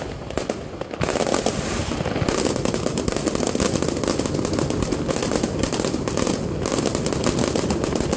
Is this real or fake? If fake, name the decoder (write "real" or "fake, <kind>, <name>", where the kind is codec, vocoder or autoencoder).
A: real